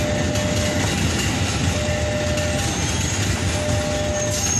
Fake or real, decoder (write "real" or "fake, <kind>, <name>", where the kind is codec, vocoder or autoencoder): real